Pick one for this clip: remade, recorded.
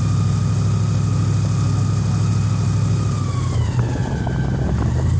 recorded